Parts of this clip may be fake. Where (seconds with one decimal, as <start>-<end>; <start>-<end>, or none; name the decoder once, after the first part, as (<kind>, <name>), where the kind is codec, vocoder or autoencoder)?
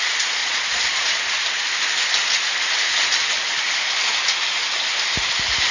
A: 0.4-1.2 (vocoder, Vocos)